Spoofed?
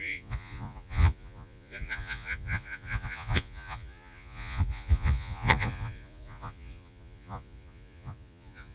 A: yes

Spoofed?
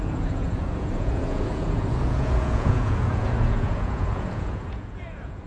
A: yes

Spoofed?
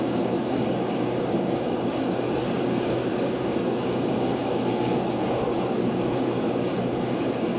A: yes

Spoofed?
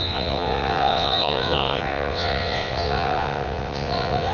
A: yes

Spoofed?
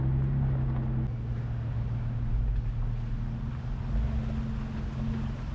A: no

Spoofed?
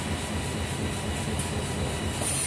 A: no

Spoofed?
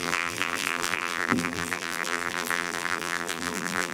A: yes